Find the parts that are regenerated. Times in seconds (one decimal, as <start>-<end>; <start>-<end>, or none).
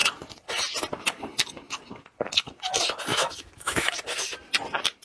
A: 3.1-3.9